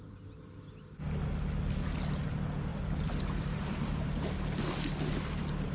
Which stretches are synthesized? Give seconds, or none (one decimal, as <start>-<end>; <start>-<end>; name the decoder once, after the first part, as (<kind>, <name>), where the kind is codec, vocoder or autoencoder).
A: 2.7-3.6 (vocoder, BigVGAN v2)